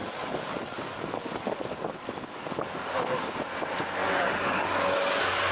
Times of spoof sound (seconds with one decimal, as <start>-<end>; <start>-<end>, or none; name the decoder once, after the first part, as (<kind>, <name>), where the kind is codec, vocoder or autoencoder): 0.0-3.3 (codec, DAC); 4.0-5.5